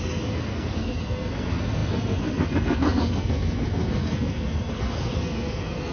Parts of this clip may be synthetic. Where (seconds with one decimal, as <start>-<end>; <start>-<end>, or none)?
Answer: 0.0-5.9

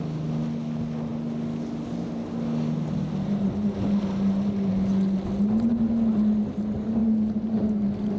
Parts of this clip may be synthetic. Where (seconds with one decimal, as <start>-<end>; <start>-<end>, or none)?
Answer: none

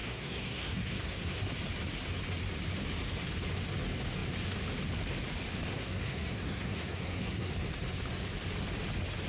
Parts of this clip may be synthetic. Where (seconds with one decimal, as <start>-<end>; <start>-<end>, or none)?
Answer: 0.0-1.4; 5.7-7.5

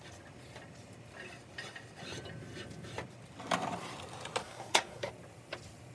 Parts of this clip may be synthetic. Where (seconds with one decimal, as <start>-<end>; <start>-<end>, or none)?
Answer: 4.4-5.1